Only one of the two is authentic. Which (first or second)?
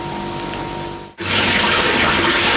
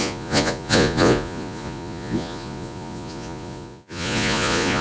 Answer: first